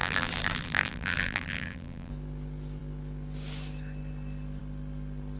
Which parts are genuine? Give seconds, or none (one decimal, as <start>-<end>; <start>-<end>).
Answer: 2.1-5.4